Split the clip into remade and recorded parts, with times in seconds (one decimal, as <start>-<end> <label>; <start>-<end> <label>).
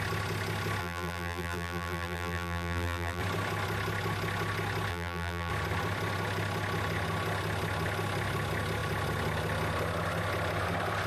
0.0-0.8 recorded; 0.8-3.2 remade; 3.2-4.9 recorded; 4.9-5.5 remade; 5.5-11.1 recorded